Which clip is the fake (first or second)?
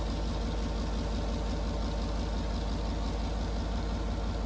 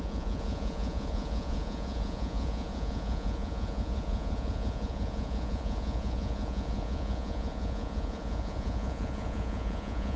second